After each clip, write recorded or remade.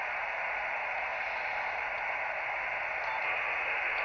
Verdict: recorded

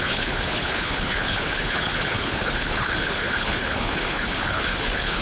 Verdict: remade